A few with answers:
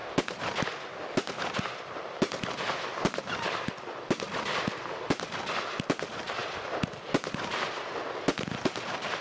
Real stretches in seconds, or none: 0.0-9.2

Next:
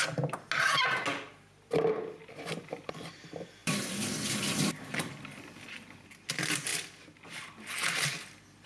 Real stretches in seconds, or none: 0.0-3.6; 5.5-8.7

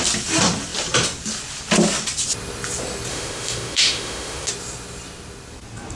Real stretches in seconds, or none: 0.0-3.1; 4.5-6.0

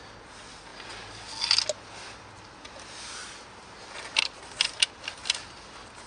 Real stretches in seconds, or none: 0.0-6.1

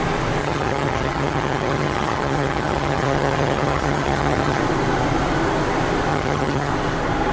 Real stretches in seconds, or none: 0.0-0.4; 4.6-6.1; 6.7-7.3

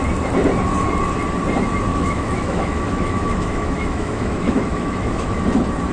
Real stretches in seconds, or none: 0.0-1.9; 5.4-5.9

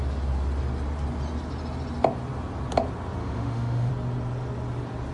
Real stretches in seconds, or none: 0.0-3.2; 3.9-5.1